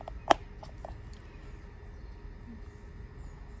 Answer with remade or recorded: recorded